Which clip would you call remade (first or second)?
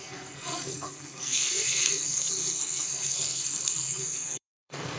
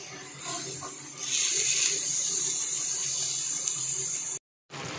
first